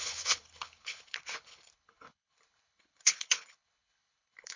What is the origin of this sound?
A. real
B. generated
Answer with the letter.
B